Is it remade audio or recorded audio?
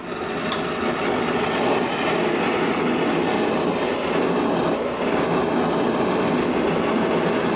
recorded